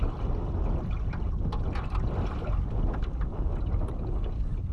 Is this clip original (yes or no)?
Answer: yes